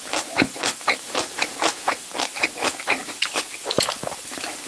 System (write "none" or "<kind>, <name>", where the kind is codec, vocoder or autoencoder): autoencoder, DAC-VAE